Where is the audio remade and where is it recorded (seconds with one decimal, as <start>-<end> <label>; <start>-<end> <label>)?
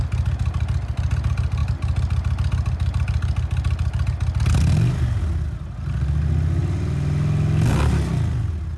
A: 0.0-8.8 recorded